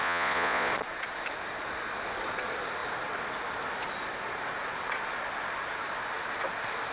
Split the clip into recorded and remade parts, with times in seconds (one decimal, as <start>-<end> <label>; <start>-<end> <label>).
0.0-0.7 remade; 0.7-6.9 recorded